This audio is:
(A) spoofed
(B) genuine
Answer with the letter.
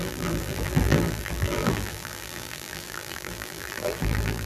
A